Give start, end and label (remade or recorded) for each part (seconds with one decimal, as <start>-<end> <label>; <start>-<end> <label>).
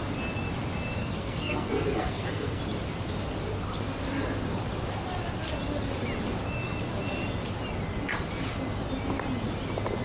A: 0.0-1.0 recorded; 1.0-2.6 remade; 2.6-10.0 recorded